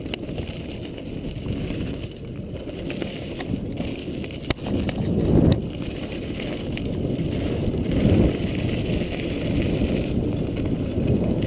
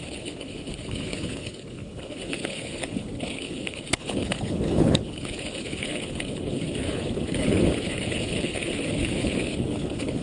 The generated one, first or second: second